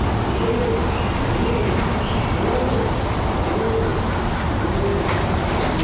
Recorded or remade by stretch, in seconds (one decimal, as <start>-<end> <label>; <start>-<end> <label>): 0.0-5.8 recorded